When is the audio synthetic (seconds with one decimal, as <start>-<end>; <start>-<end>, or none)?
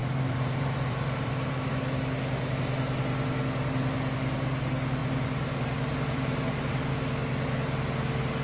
0.0-1.5; 5.0-6.9